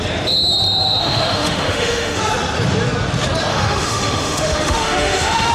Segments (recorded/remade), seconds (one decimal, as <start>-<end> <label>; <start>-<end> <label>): 0.0-1.0 recorded; 1.0-2.2 remade; 2.2-3.5 recorded; 3.5-5.5 remade